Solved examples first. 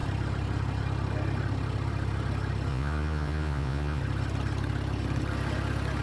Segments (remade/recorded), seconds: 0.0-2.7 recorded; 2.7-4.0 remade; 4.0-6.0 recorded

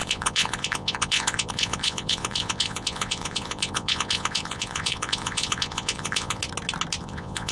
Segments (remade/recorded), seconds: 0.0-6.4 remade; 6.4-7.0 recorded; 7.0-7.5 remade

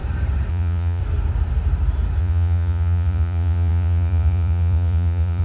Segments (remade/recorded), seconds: 0.0-0.5 recorded; 0.5-1.0 remade; 1.0-2.2 recorded; 2.2-5.4 remade

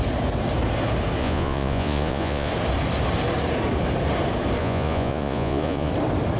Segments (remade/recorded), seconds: 0.0-1.2 recorded; 1.2-2.5 remade; 2.5-4.6 recorded; 4.6-5.9 remade; 5.9-6.4 recorded

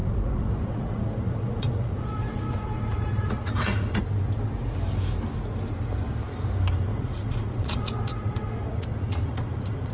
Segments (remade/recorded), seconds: 0.0-4.0 remade; 4.0-6.9 recorded; 6.9-9.9 remade

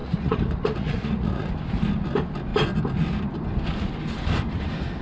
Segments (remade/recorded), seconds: 0.0-1.5 remade; 1.5-5.0 recorded